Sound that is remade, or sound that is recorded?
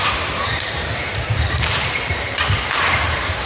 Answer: remade